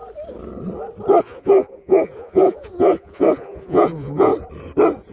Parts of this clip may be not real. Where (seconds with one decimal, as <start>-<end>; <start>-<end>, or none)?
1.2-4.3